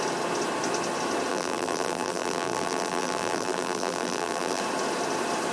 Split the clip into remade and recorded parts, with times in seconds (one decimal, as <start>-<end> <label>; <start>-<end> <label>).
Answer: 0.0-1.3 recorded; 1.3-4.6 remade; 4.6-5.5 recorded